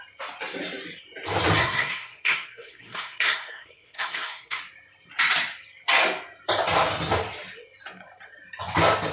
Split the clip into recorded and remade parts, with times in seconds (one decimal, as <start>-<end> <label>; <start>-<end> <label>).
0.0-1.6 recorded; 1.6-4.6 remade; 4.6-9.1 recorded